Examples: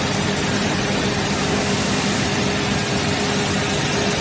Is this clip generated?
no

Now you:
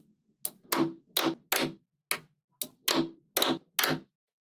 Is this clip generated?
no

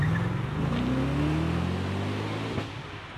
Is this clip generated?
no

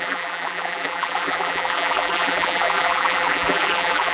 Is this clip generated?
yes